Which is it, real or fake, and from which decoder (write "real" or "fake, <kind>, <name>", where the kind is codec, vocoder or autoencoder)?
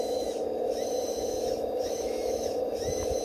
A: fake, autoencoder, DAC-VAE